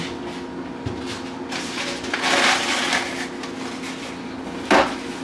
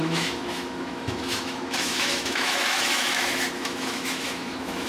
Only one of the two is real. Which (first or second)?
first